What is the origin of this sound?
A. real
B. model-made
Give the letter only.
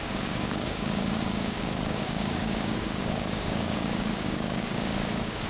B